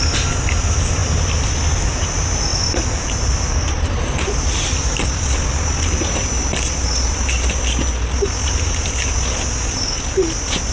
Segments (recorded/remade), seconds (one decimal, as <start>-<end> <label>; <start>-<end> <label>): 0.0-10.7 recorded